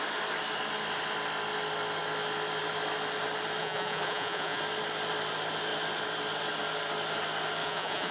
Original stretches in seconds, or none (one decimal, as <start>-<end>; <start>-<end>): 0.0-3.6; 4.6-7.6

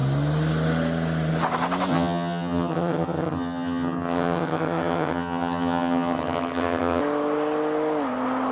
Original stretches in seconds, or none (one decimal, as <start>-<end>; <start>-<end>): 0.0-1.9; 7.0-8.5

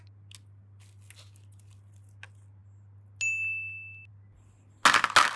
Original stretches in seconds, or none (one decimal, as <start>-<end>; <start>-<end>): 0.0-5.4

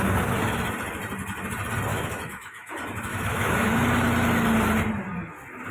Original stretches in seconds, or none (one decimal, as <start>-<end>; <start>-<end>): 0.0-1.9; 2.7-3.1; 3.7-5.7

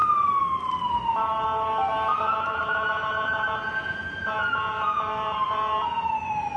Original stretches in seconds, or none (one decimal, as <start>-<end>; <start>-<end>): 0.0-2.1; 6.1-6.6

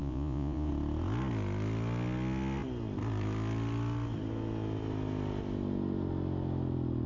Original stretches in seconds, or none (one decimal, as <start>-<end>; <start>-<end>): 0.7-7.1

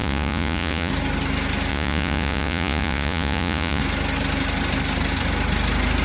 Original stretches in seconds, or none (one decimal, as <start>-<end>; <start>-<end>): 0.9-1.7; 3.8-6.0